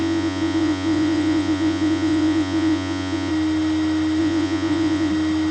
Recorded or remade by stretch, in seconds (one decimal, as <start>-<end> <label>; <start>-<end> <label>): 0.0-3.3 remade; 3.3-4.2 recorded; 4.2-5.1 remade; 5.1-5.5 recorded